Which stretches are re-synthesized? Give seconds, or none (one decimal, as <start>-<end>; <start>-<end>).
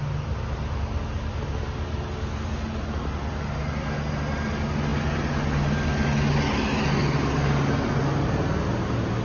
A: none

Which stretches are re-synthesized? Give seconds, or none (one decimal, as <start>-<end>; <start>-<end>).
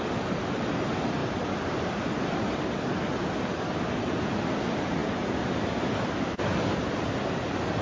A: 1.2-3.9; 5.0-7.1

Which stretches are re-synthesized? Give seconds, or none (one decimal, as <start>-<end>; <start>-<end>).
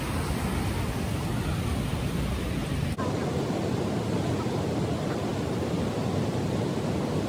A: none